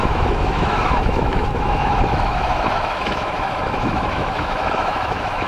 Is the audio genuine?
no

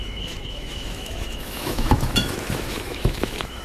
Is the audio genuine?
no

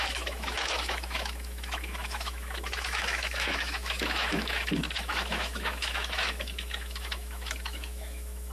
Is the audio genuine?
no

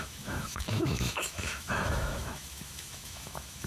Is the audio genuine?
no